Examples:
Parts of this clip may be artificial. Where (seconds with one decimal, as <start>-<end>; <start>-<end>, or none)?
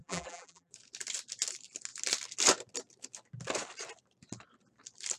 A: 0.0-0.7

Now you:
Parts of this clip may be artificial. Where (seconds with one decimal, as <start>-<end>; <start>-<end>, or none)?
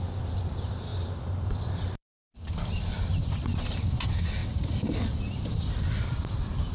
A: 0.9-3.8; 4.4-6.3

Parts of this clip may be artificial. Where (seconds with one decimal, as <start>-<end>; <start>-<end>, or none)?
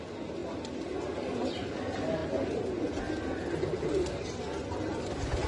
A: none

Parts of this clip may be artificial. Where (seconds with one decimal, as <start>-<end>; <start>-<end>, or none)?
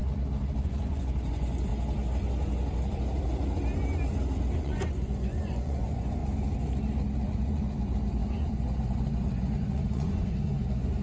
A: 0.6-1.7; 4.6-6.2; 7.2-11.0